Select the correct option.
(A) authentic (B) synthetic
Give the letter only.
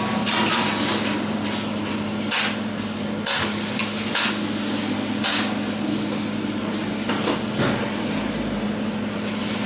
A